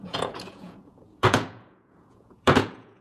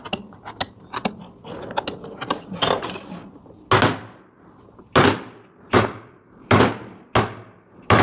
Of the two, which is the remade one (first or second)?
first